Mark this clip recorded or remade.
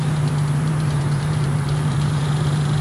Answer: remade